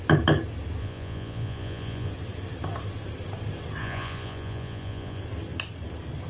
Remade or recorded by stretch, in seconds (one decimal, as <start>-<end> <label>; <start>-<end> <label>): 0.0-0.8 recorded; 0.8-2.1 remade; 2.1-3.8 recorded; 3.8-5.2 remade; 5.2-6.3 recorded